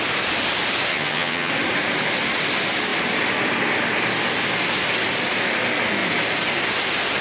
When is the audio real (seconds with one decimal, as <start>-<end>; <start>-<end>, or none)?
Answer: 0.0-0.9; 1.5-7.2